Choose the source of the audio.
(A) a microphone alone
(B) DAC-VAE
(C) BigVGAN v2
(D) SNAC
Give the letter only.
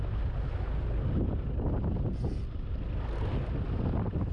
A